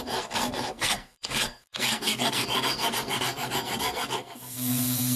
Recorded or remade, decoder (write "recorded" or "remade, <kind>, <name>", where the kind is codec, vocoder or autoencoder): remade, codec, SNAC